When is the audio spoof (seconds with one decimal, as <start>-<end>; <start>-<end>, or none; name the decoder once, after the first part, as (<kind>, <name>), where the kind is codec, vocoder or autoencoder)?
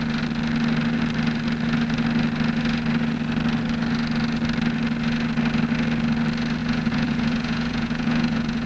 6.6-8.7 (vocoder, Vocos)